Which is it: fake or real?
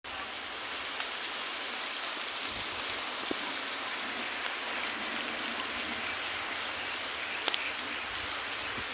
real